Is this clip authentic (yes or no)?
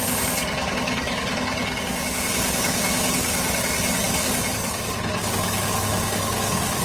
no